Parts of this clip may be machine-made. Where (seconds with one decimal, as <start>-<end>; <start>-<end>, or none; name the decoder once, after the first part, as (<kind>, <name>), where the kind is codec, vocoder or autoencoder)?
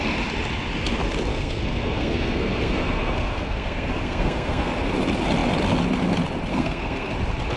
1.3-4.7 (codec, SNAC); 6.5-7.1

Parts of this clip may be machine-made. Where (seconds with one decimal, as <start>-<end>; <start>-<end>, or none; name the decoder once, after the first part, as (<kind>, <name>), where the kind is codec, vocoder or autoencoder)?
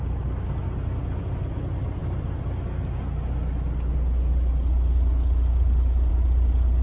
none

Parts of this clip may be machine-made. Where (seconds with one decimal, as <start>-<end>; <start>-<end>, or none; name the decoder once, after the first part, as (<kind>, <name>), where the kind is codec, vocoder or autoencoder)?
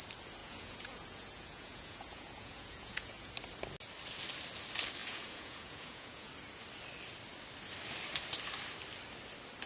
0.4-3.3 (vocoder, Vocos); 5.0-6.3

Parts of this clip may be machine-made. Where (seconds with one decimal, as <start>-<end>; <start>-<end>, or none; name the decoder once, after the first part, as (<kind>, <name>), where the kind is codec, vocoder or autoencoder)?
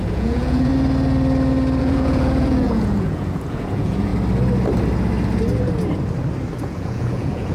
0.0-0.7 (vocoder, Vocos); 1.8-4.1; 6.6-7.5